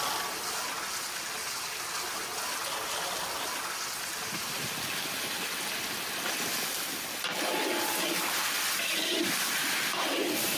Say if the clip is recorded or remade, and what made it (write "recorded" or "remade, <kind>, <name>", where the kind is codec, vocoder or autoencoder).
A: recorded